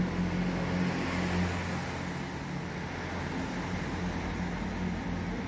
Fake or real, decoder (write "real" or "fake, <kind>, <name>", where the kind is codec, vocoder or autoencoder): real